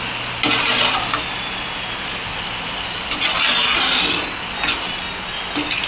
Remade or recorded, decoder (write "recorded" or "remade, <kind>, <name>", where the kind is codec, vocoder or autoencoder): recorded